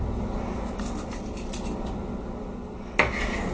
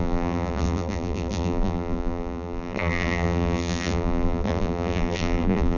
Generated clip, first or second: second